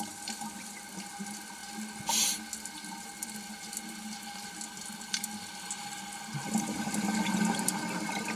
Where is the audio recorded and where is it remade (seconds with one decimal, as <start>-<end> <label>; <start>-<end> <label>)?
0.0-8.4 recorded

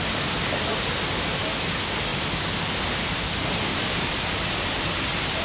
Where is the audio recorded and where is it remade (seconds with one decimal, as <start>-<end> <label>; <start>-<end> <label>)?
0.0-3.7 recorded; 3.7-5.4 remade